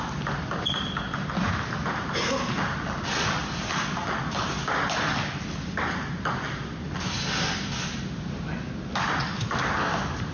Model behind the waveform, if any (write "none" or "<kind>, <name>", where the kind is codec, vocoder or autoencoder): none